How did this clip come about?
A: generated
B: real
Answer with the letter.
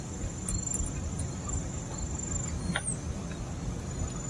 B